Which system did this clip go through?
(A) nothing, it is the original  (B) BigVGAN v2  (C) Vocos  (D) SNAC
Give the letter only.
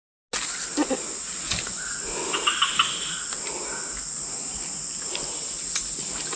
A